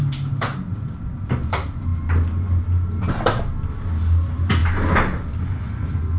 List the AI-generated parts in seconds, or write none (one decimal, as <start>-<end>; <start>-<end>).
none